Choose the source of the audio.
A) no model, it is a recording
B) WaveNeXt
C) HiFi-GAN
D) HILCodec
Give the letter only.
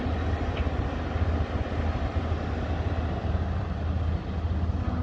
A